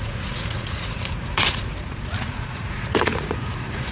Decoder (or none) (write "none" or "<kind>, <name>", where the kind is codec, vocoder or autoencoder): vocoder, Vocos